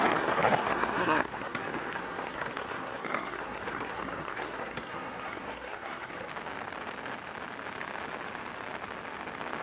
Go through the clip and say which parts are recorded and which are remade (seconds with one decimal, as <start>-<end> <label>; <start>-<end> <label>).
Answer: 0.0-6.3 remade; 6.3-9.6 recorded